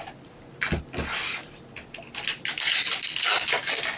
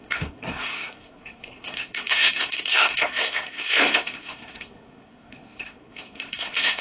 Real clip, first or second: first